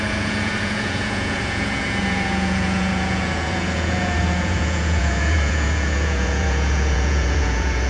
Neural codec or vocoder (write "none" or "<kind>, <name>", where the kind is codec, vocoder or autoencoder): vocoder, Vocos